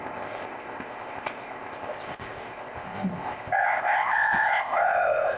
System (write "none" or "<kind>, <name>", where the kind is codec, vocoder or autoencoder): codec, ZipCodec